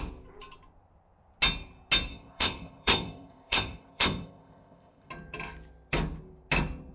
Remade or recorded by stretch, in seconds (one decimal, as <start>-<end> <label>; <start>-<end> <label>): 0.0-2.1 recorded; 2.1-5.1 remade; 5.1-6.9 recorded